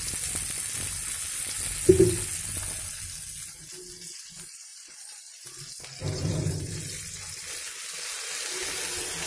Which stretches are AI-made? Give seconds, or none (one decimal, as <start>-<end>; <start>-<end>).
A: 6.0-7.0